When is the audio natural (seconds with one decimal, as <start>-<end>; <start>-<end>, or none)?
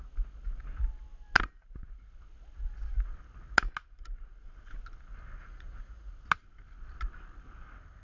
0.0-5.4; 6.1-8.0